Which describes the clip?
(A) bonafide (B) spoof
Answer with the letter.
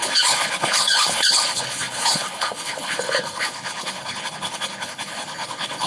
B